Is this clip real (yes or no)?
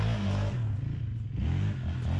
yes